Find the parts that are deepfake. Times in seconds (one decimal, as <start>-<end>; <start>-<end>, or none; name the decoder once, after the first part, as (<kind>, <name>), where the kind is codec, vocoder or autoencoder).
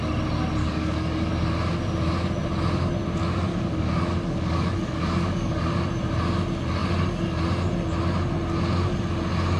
0.6-1.3 (codec, DAC); 3.5-5.7